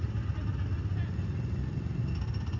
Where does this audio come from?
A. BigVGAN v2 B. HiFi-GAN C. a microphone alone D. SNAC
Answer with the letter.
C